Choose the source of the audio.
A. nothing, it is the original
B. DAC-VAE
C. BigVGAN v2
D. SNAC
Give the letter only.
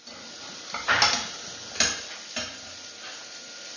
A